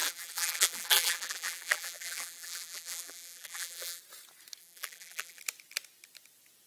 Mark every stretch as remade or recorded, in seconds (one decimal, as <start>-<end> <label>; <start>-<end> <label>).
0.0-4.0 remade; 4.0-4.6 recorded; 4.6-5.4 remade; 5.4-6.7 recorded